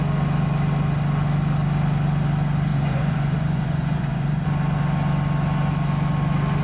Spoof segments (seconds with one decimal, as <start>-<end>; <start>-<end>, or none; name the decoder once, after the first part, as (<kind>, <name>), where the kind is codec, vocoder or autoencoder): 2.7-4.4 (vocoder, Vocos)